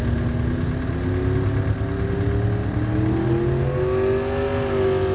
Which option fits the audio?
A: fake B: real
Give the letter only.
B